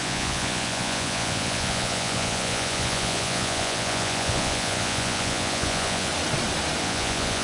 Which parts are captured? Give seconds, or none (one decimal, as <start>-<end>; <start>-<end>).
6.1-6.8